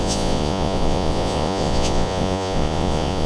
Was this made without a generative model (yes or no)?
no